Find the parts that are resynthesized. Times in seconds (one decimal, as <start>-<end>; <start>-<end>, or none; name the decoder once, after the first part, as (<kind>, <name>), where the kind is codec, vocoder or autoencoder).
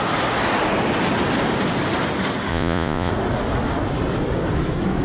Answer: 2.5-3.1 (vocoder, Vocos)